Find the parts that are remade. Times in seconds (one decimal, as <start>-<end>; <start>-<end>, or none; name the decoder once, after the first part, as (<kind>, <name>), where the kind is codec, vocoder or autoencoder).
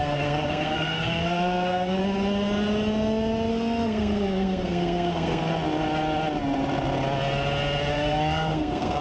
0.0-2.0 (codec, SNAC); 3.5-5.4; 7.9-9.0